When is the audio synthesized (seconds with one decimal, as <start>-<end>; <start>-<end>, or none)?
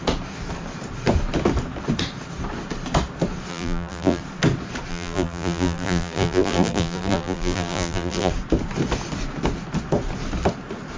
3.5-4.2; 4.9-8.3